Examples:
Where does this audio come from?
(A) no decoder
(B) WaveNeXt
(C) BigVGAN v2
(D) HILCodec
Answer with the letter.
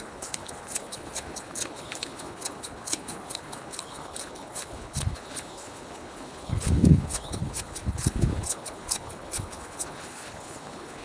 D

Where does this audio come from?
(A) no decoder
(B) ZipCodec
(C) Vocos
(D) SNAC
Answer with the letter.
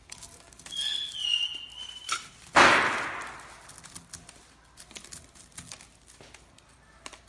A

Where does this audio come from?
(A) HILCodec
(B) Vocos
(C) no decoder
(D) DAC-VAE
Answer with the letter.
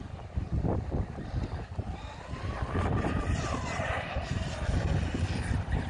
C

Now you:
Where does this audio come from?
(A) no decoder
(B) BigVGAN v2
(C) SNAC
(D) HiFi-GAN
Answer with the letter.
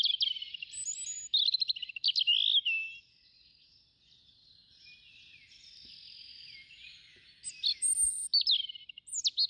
A